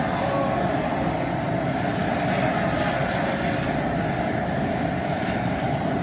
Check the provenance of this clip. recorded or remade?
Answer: recorded